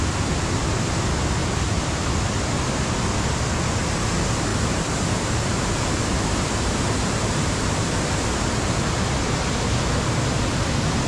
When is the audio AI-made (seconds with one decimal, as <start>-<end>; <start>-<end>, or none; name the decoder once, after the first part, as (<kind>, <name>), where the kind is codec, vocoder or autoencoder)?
1.4-2.1 (vocoder, BigVGAN v2); 4.5-7.9